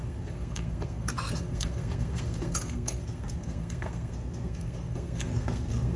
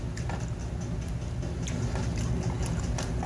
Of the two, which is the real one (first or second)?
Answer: second